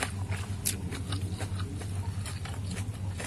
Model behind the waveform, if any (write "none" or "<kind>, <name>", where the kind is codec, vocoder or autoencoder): none